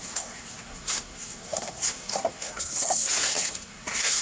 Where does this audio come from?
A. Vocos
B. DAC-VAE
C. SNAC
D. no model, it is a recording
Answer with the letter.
C